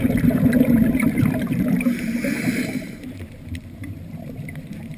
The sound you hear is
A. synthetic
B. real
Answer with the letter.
A